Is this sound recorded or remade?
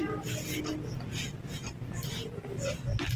recorded